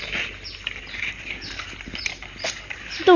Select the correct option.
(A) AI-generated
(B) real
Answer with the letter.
B